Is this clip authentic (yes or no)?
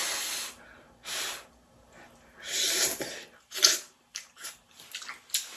yes